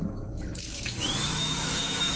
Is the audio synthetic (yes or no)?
yes